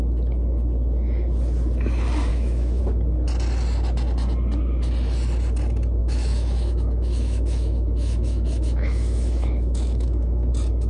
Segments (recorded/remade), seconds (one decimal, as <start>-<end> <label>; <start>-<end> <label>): 0.0-2.3 recorded; 2.3-2.8 remade; 2.8-6.0 recorded; 6.0-10.5 remade; 10.5-10.9 recorded